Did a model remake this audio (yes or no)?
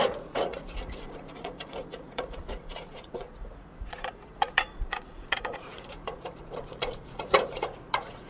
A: yes